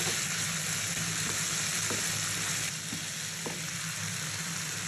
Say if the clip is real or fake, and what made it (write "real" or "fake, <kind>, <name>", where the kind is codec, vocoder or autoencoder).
real